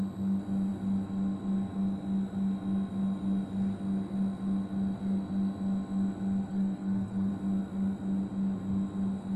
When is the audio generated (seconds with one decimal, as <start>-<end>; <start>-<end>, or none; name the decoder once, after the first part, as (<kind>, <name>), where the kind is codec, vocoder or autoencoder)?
6.5-7.3 (codec, SNAC)